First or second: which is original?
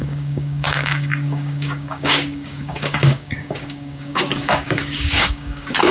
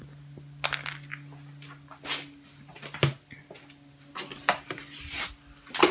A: second